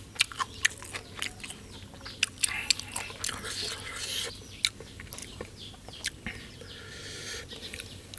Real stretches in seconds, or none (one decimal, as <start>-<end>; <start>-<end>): 0.0-5.2; 6.1-8.2